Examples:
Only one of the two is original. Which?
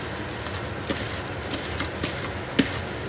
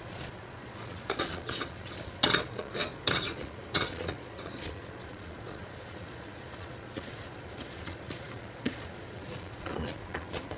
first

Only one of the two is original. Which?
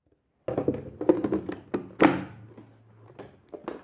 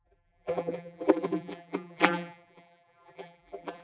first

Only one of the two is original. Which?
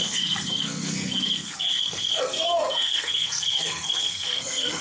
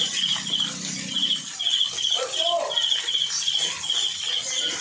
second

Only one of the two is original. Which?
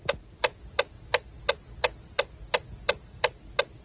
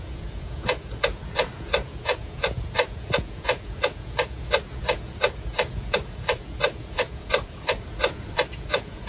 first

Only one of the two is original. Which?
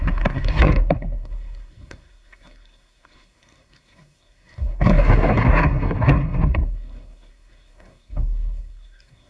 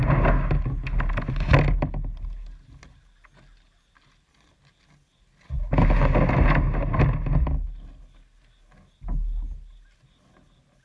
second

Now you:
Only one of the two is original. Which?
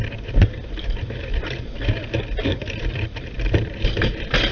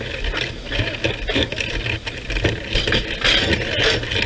second